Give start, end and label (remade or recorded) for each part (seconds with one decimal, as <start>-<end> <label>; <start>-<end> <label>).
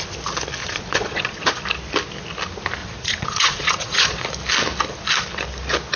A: 0.0-0.6 recorded; 0.6-1.6 remade; 1.6-2.8 recorded; 2.8-4.2 remade; 4.2-6.0 recorded